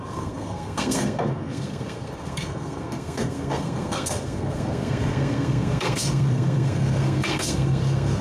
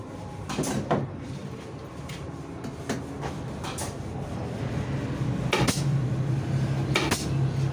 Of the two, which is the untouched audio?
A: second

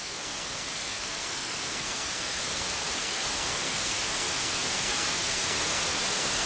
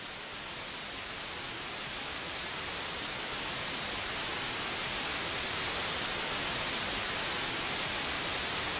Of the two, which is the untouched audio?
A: second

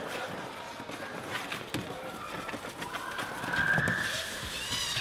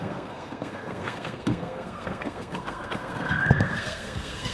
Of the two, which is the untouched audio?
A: first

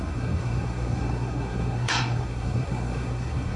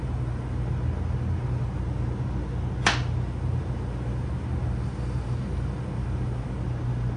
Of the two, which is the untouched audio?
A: second